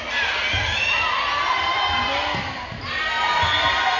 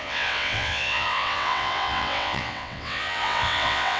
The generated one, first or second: second